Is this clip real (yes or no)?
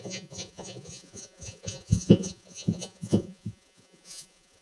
no